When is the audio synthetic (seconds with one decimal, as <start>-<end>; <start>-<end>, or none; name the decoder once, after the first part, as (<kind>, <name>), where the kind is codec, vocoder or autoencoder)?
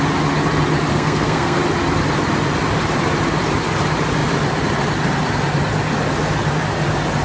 0.9-1.6 (codec, SNAC)